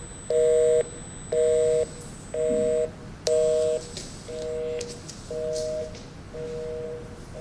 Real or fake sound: real